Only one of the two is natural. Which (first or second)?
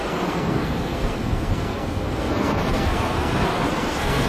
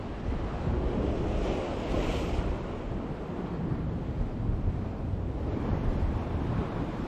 second